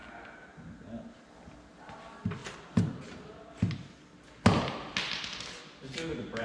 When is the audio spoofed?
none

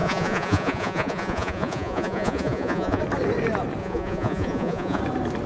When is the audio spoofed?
0.0-3.0 (vocoder, Vocos); 3.8-5.0